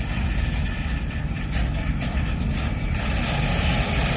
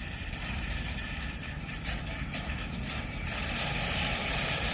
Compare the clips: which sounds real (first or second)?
first